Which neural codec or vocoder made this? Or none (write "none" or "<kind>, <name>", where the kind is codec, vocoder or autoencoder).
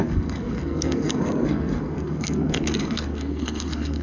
codec, SNAC